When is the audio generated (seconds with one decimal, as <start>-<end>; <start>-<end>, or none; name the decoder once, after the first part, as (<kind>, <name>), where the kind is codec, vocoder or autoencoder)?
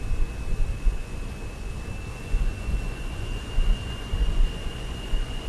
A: 0.7-1.7 (vocoder, Vocos); 2.1-5.5